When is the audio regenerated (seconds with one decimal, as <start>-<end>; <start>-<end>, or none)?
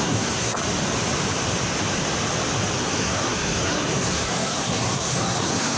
0.0-0.6; 2.8-5.8